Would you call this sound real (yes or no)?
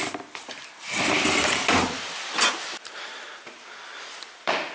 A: no